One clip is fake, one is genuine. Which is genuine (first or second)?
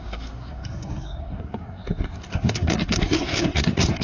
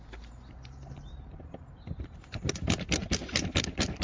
second